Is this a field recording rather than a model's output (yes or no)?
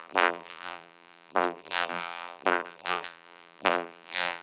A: no